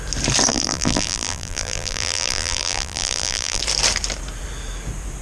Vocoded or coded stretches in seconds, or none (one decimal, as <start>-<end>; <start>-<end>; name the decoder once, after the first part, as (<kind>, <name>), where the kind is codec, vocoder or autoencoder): 0.5-3.6 (vocoder, BigVGAN v2)